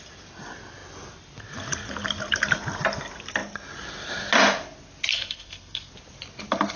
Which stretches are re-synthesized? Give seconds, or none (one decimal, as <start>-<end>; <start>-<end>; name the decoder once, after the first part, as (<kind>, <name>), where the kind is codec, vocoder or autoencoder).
5.1-5.9 (codec, SNAC)